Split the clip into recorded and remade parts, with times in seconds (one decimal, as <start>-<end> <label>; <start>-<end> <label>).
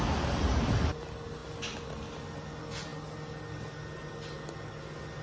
0.0-5.2 recorded